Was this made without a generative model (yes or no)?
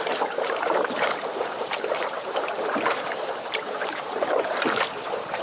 no